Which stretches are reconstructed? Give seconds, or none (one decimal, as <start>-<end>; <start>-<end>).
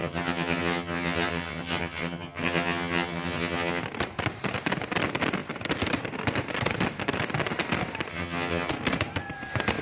0.0-3.8; 8.1-8.7